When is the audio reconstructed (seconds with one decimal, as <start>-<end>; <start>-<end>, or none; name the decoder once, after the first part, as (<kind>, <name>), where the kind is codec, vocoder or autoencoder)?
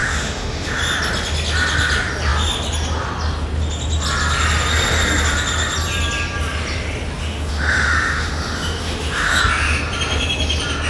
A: 0.0-0.8 (autoencoder, DAC-VAE); 7.2-9.4